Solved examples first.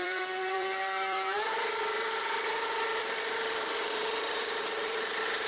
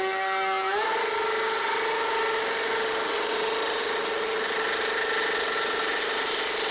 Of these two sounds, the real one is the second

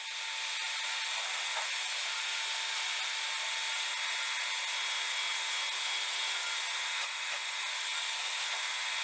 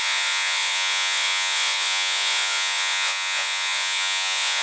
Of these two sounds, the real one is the first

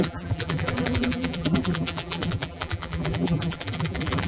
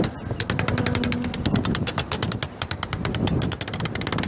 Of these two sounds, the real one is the second